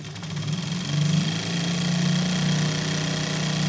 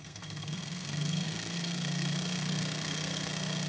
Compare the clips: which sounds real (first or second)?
first